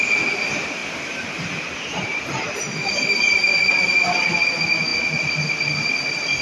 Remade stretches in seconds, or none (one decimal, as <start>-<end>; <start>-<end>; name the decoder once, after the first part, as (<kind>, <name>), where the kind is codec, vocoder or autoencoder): 0.8-3.7 (vocoder, BigVGAN v2)